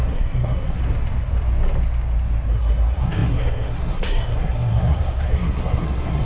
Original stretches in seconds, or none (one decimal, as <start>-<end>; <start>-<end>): 0.8-2.5